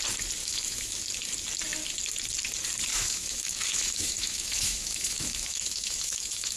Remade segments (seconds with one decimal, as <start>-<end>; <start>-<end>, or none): 0.4-1.0; 2.9-6.6